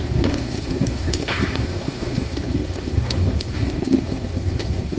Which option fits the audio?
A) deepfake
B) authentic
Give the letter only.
A